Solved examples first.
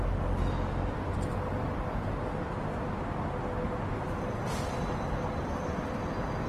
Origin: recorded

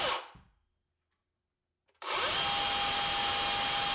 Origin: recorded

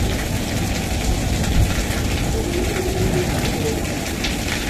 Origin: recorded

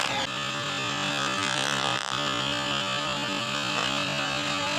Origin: recorded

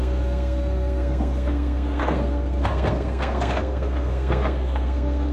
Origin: remade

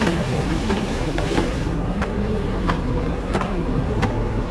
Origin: remade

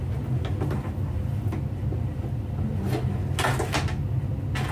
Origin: recorded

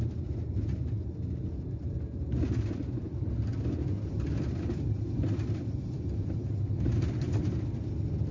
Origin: recorded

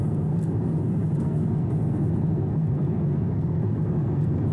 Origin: remade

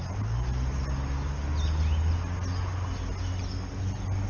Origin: recorded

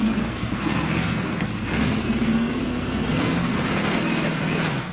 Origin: remade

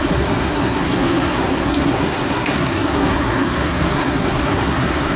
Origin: remade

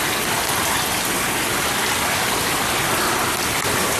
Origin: recorded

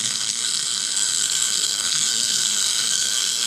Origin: remade